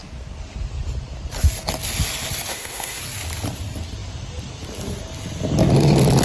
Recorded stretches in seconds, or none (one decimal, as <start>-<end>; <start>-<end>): 0.0-2.5; 3.0-6.2